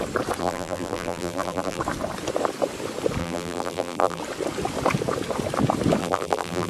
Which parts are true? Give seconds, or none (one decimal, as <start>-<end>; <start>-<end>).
0.0-0.4; 1.8-3.2; 4.2-6.0